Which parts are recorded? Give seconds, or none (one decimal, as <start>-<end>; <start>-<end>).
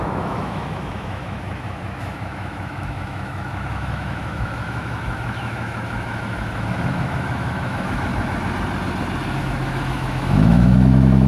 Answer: 8.1-9.4